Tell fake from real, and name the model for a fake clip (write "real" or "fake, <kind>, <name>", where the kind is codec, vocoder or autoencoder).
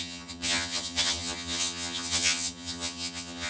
fake, vocoder, HiFi-GAN